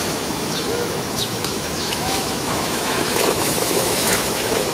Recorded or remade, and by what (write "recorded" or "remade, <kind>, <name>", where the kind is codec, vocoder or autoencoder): remade, autoencoder, DAC-VAE